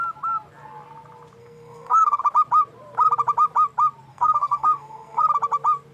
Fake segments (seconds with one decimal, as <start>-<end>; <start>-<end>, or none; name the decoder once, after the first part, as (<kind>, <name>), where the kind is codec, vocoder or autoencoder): 1.4-2.2 (codec, SNAC); 4.1-5.2